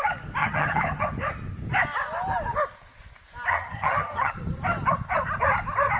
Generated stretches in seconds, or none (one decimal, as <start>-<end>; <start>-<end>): 0.4-1.0; 3.5-4.3